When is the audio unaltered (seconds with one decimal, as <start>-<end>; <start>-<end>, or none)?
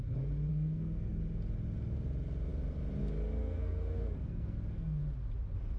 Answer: 0.0-0.5; 1.2-3.4; 5.0-5.8